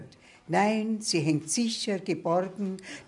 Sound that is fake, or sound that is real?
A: real